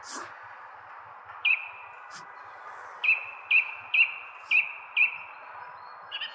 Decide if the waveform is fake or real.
real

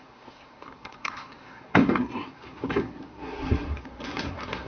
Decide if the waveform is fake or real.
fake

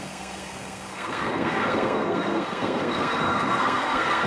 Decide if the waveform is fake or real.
fake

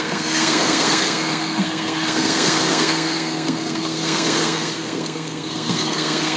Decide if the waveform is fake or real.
fake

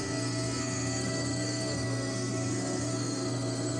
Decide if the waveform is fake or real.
fake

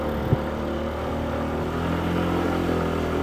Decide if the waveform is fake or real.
real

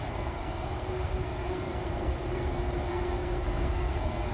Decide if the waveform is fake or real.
fake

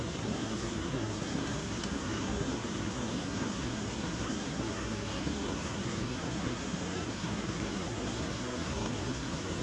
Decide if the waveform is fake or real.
fake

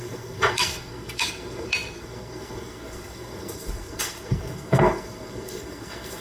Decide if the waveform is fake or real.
fake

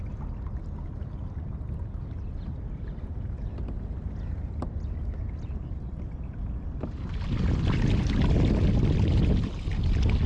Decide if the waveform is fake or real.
real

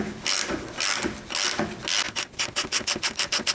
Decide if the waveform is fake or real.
real